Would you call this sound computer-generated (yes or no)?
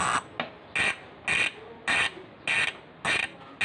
no